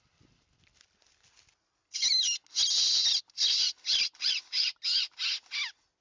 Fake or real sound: real